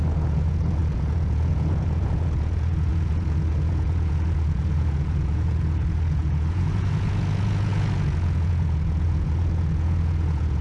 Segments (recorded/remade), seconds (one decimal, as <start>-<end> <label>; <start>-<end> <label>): 0.0-10.6 remade